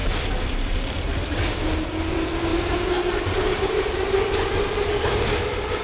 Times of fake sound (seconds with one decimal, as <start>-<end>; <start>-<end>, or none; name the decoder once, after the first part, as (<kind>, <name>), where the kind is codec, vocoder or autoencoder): 0.0-1.1 (vocoder, BigVGAN v2); 2.5-4.1